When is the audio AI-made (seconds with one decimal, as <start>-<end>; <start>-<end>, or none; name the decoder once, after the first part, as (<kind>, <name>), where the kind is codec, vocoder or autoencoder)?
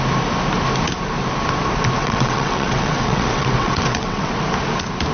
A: 2.0-4.3 (vocoder, WaveNeXt)